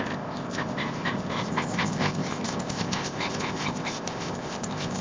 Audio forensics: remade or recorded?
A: remade